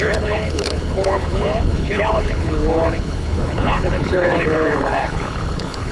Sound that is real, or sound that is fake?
fake